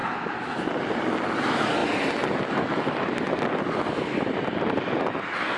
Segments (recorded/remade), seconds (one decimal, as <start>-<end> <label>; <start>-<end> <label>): 0.0-0.7 remade; 0.7-5.6 recorded